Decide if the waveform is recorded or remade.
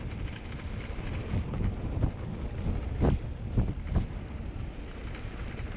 recorded